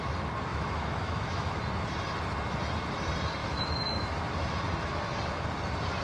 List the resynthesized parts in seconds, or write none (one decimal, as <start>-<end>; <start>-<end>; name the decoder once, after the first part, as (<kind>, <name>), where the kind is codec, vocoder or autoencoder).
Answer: 0.5-1.6 (autoencoder, DAC-VAE); 3.4-4.1

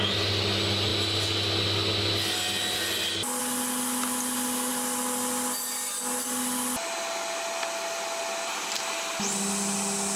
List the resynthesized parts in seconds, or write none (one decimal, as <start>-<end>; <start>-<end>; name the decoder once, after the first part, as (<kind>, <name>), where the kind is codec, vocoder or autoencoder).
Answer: none

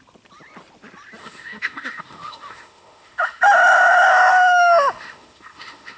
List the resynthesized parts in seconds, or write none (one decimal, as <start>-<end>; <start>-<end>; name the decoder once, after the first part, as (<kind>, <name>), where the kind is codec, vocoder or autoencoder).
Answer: 1.2-3.4 (autoencoder, DAC-VAE); 4.3-6.0

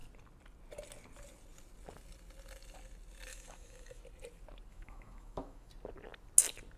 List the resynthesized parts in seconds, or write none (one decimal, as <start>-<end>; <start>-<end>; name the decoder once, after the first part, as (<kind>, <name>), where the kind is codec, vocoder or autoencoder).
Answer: 3.3-4.0 (autoencoder, DAC-VAE); 4.7-5.7

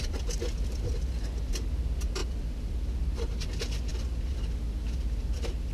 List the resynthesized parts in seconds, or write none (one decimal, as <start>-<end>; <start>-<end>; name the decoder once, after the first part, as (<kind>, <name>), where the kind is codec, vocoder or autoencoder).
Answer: none

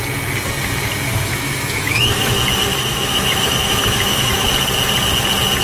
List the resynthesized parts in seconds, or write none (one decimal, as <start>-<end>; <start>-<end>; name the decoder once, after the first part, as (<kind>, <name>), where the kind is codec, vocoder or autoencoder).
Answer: 1.3-2.3 (autoencoder, DAC-VAE); 2.7-4.5